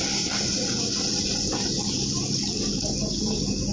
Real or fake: real